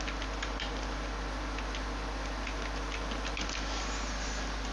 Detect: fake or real real